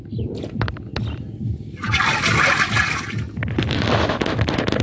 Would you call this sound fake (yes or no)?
no